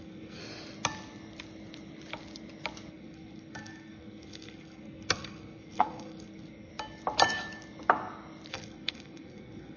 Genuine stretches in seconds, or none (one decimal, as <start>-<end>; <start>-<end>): 0.4-2.9; 6.7-8.5